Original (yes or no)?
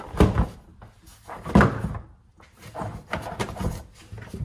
yes